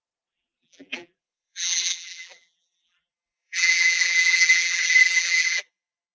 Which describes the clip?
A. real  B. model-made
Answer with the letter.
B